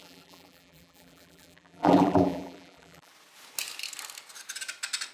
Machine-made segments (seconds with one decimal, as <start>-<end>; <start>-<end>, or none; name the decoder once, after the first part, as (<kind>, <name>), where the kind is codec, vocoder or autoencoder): 0.0-3.1 (vocoder, BigVGAN v2)